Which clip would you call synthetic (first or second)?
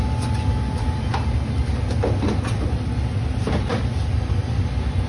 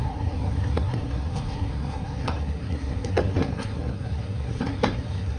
second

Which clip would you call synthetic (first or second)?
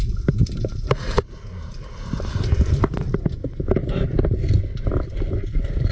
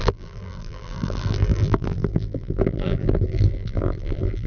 second